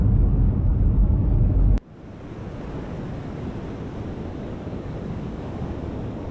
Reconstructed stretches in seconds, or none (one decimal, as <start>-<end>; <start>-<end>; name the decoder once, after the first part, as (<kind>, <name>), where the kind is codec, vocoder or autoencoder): 0.0-1.8 (codec, DAC); 4.4-6.3